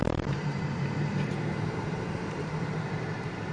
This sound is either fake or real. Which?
fake